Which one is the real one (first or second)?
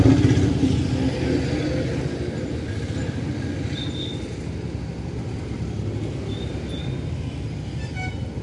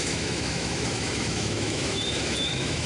first